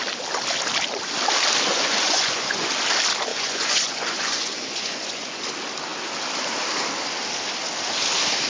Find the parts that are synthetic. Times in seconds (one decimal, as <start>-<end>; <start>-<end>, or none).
1.7-2.7; 3.3-5.4